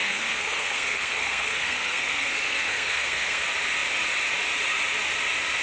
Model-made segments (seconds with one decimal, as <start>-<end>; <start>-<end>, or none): 0.0-3.4